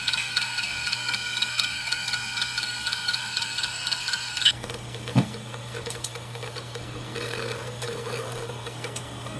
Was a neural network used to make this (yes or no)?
yes